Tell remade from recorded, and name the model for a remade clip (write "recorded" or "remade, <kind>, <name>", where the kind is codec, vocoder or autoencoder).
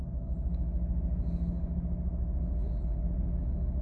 recorded